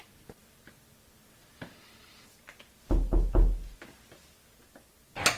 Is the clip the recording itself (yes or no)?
yes